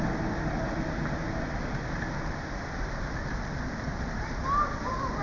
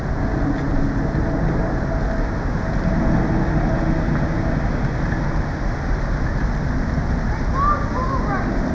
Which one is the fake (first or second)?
first